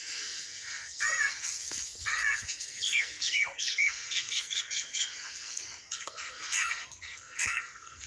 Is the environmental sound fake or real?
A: fake